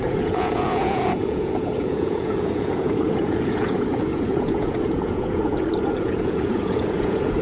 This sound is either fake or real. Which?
fake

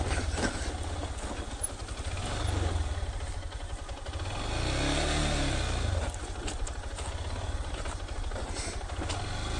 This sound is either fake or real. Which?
real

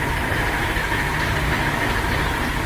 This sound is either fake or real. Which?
real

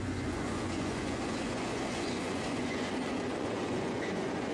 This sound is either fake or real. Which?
fake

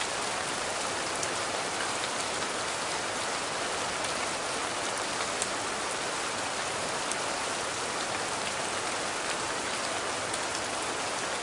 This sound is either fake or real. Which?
real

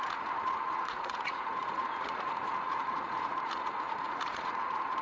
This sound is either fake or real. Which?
fake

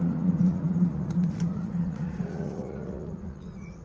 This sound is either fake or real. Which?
fake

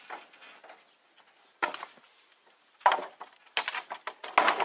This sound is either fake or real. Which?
real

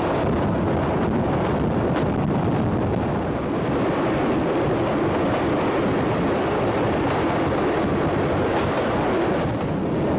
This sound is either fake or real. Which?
real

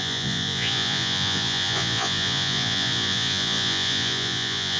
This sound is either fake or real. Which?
fake